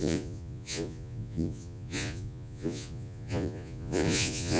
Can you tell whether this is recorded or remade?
remade